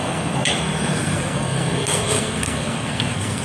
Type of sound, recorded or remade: remade